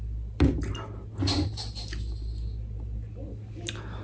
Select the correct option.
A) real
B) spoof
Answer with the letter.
A